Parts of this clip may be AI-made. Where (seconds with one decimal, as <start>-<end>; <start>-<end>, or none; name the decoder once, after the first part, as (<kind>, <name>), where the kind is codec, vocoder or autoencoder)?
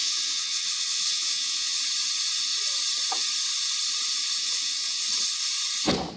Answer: 0.0-1.8 (vocoder, WaveNeXt); 4.4-5.4